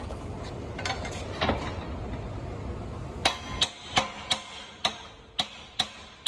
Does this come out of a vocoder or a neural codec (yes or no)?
no